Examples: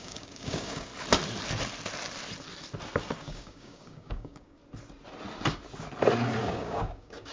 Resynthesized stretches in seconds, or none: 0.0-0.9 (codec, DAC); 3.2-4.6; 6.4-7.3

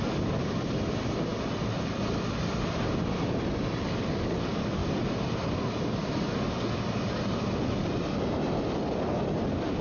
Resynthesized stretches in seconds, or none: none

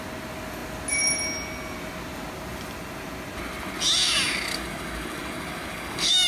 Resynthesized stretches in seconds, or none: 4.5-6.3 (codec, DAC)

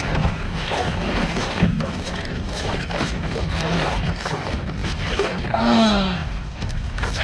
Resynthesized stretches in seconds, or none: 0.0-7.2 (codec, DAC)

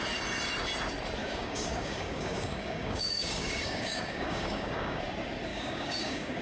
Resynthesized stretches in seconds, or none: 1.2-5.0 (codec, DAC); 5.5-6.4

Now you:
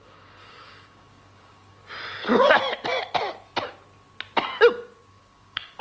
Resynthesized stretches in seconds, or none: 0.0-1.8 (codec, DAC); 5.1-5.8

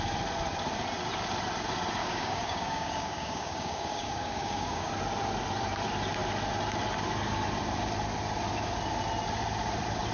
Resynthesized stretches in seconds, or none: 2.0-4.9 (codec, DAC)